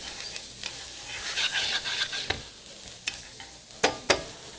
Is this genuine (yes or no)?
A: yes